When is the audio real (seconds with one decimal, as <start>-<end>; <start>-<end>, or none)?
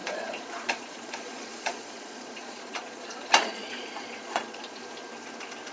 4.8-5.7